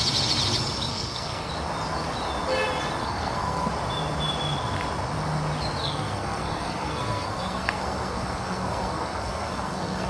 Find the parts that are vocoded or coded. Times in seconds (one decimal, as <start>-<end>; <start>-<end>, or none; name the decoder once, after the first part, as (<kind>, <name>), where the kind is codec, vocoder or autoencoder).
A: 0.9-1.5 (codec, SNAC); 3.0-3.7; 5.8-10.1